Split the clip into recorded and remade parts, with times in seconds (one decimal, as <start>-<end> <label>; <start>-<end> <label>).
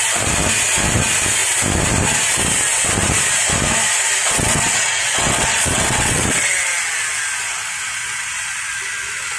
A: 0.0-4.2 recorded; 4.2-6.5 remade; 6.5-9.4 recorded